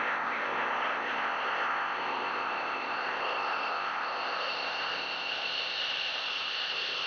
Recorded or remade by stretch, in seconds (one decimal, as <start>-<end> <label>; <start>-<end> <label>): 0.0-7.1 remade